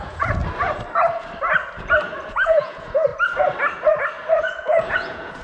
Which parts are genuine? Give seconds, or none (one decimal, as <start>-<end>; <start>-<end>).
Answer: 0.4-2.3; 3.1-4.4